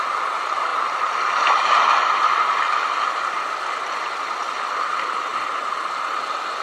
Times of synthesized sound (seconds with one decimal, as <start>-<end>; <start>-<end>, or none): none